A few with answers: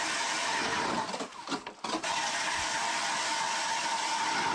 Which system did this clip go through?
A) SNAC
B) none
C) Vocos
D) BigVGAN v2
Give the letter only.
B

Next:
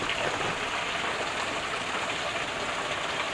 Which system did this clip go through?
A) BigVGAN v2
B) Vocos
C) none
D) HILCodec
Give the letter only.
C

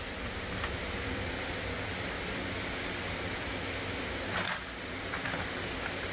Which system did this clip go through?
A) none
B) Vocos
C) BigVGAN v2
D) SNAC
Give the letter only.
C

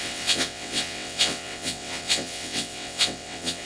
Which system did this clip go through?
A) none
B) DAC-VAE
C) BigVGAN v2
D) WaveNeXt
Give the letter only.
D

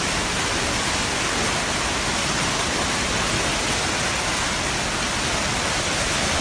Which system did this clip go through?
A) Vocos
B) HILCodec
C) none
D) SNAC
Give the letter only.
C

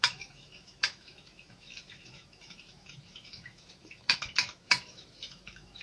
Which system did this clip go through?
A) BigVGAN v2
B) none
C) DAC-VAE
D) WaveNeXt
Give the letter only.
C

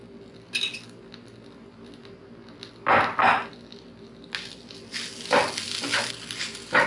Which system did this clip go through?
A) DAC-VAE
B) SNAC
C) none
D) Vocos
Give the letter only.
C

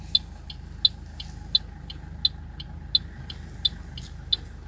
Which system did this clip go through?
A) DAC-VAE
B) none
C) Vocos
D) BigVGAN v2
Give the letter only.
B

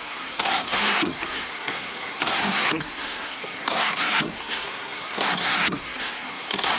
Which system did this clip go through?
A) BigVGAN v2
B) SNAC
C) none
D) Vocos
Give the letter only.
B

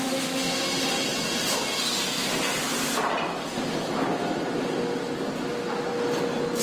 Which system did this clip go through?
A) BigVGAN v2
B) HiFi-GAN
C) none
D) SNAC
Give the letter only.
C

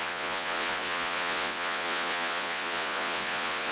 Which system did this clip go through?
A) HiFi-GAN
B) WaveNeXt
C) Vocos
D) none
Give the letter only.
C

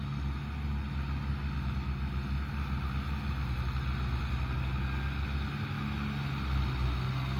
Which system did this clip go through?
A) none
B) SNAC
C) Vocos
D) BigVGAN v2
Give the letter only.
A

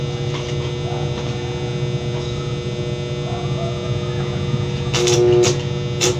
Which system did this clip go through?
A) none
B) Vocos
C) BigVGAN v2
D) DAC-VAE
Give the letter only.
A